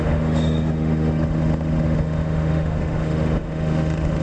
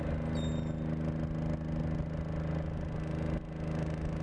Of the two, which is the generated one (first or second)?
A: first